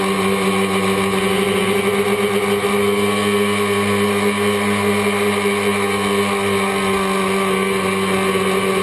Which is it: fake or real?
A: real